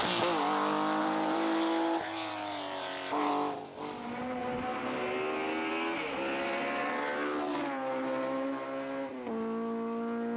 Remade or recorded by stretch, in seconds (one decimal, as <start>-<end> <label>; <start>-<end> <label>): 0.0-1.0 recorded; 1.0-3.3 remade; 3.3-10.4 recorded